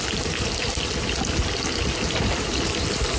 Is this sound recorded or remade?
recorded